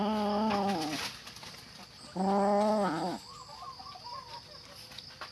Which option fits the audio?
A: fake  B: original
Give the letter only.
B